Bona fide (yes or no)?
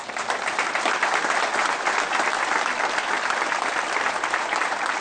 no